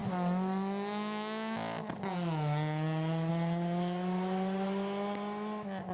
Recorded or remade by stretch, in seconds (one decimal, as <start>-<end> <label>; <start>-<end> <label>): 0.0-5.9 recorded